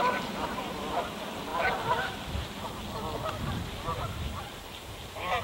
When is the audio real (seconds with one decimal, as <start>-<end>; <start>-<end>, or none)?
0.0-3.9